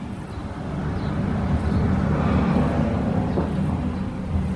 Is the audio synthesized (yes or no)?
no